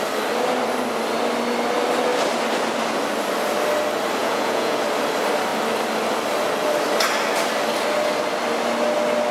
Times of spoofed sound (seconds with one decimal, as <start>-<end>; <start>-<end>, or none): 4.2-4.8